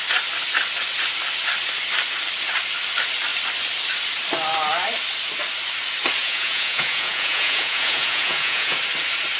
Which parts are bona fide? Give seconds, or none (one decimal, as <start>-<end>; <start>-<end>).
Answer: 0.0-6.2; 8.8-9.4